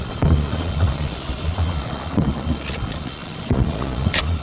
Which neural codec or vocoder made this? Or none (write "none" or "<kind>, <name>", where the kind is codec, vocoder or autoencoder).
vocoder, Vocos